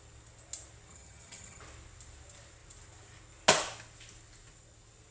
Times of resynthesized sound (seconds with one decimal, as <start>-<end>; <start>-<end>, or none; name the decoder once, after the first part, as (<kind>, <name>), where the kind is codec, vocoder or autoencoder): 0.9-1.6 (vocoder, HiFi-GAN)